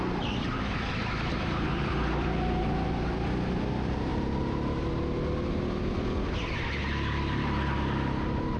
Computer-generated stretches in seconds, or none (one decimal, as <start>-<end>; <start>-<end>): 4.1-4.9